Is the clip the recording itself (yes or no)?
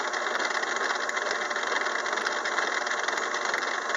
yes